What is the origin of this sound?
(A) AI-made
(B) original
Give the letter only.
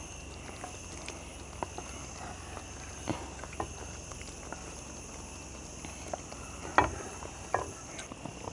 B